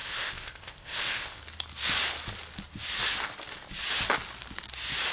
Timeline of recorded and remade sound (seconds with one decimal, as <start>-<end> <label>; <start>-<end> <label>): 0.0-1.4 remade; 1.4-5.1 recorded